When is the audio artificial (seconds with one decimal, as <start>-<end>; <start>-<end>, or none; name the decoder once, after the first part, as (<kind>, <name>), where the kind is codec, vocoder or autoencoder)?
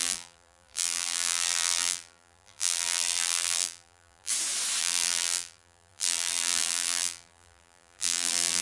0.0-4.3 (vocoder, BigVGAN v2); 4.8-8.6